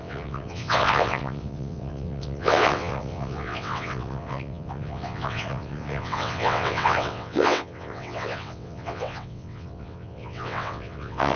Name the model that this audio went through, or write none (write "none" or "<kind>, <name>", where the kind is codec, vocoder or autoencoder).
vocoder, WaveNeXt